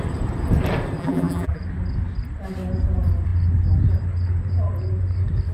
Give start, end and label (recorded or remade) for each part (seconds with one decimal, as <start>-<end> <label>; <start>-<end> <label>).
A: 0.0-1.0 recorded; 1.0-1.6 remade; 1.6-5.5 recorded